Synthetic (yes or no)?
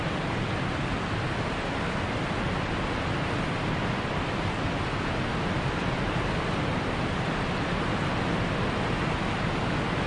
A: no